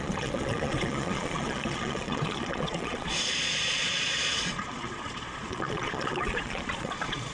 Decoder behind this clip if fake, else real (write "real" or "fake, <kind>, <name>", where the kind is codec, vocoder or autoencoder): fake, vocoder, Vocos